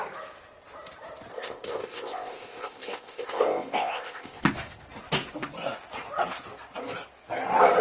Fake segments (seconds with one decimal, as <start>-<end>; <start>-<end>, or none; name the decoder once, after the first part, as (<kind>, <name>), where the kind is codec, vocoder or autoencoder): 1.3-4.4 (codec, ZipCodec)